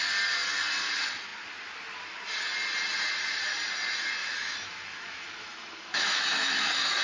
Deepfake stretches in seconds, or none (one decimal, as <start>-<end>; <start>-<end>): 4.2-7.0